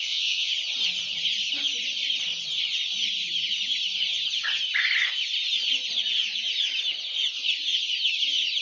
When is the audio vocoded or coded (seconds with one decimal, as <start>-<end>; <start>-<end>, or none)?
0.0-0.5